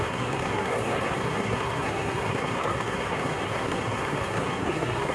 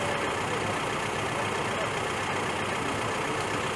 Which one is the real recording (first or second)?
second